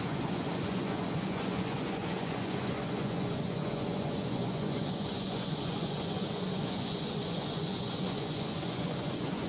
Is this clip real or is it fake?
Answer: fake